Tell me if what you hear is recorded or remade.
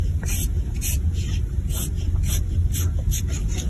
recorded